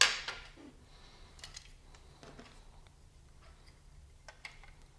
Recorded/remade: recorded